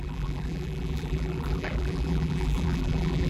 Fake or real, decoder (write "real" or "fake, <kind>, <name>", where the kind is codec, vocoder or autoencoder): fake, vocoder, BigVGAN v2